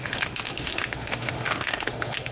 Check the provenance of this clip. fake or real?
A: fake